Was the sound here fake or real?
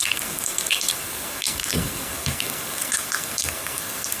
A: fake